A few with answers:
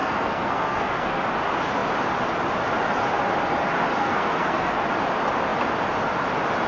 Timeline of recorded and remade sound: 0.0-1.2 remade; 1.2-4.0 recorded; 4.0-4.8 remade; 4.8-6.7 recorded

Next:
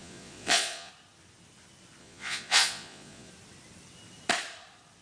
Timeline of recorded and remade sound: 0.0-0.9 remade; 0.9-2.0 recorded; 2.0-3.3 remade; 3.3-5.0 recorded

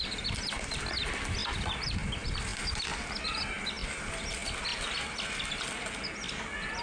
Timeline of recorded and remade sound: 0.0-6.8 recorded

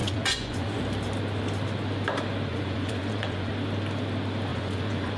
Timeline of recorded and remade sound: 0.0-0.8 remade; 0.8-2.5 recorded; 2.5-3.5 remade; 3.5-4.5 recorded; 4.5-5.2 remade

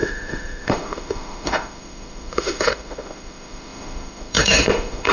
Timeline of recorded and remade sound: 0.0-5.1 remade